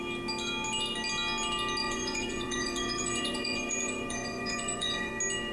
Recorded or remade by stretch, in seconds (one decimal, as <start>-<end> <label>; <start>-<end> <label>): 0.0-1.8 recorded; 1.8-5.1 remade; 5.1-5.5 recorded